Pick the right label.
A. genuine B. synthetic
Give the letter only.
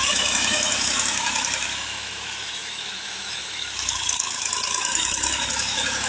B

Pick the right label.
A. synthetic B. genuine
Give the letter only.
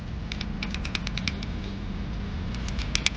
B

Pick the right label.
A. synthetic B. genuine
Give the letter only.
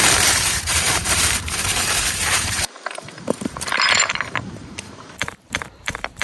A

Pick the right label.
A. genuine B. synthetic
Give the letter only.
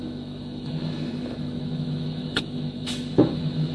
B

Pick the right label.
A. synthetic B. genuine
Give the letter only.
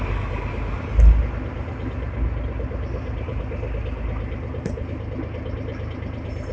B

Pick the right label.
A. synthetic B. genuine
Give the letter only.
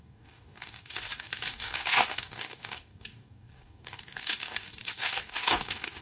A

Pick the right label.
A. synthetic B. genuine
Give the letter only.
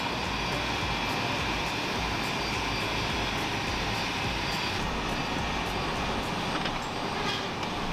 B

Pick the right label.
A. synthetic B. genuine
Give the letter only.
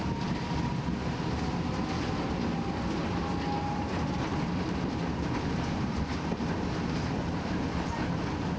B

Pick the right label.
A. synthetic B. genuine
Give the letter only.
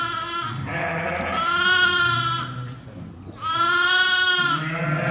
B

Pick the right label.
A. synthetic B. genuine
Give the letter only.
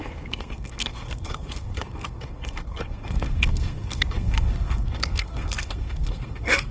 A